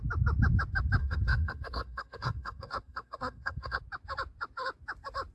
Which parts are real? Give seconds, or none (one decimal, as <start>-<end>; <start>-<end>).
0.0-1.0; 3.8-5.3